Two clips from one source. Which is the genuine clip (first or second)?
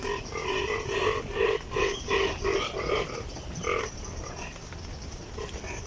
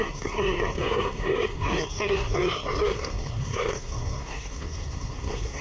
first